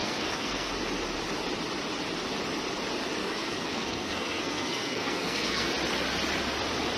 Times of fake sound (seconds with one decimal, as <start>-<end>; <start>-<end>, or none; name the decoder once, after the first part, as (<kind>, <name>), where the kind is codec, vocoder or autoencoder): 0.0-0.7 (codec, SNAC); 3.2-5.7